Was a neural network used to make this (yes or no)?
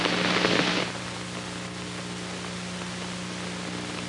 no